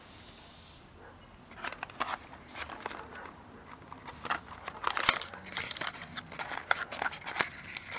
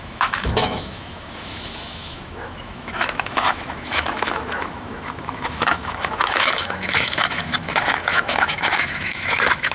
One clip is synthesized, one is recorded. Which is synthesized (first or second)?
second